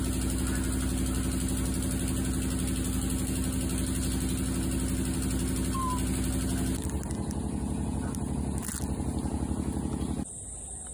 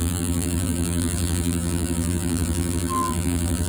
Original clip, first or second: first